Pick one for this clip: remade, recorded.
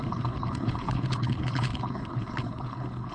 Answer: remade